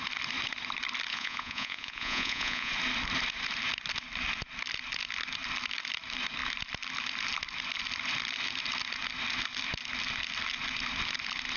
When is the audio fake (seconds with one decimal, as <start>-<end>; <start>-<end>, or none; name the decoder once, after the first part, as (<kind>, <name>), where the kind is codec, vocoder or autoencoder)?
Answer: 1.1-2.7 (vocoder, Vocos)